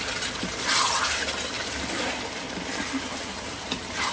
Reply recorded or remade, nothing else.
recorded